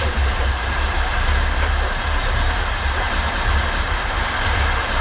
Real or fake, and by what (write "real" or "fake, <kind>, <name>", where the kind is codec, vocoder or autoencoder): fake, vocoder, BigVGAN v2